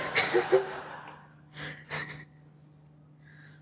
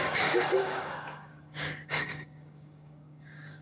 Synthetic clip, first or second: second